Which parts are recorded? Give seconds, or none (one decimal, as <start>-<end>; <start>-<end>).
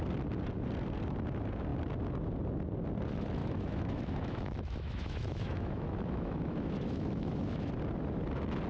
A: 0.0-3.4; 7.7-8.7